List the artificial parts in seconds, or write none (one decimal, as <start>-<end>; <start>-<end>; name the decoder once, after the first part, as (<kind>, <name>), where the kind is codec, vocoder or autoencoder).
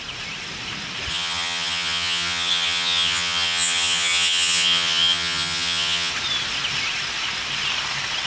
1.1-6.1 (vocoder, HiFi-GAN)